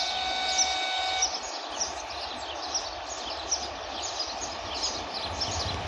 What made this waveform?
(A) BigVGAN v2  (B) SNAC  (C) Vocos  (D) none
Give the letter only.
D